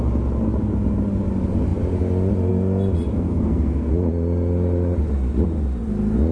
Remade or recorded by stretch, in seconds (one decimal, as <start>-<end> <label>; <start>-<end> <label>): 0.0-3.1 recorded; 3.1-3.9 remade; 3.9-6.3 recorded